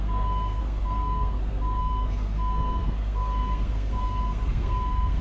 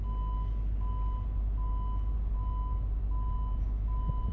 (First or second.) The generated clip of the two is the first